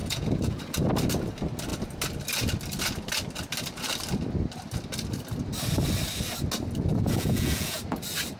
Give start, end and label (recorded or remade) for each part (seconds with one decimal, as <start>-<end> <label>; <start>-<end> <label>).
0.0-0.6 remade; 0.6-6.9 recorded; 6.9-7.8 remade; 7.8-8.4 recorded